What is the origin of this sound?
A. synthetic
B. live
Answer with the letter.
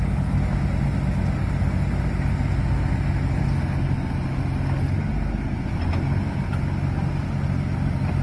B